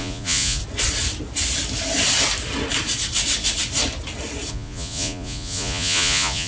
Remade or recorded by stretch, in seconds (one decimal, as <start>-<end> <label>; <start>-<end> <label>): 0.0-0.6 remade; 0.6-4.5 recorded; 4.5-6.5 remade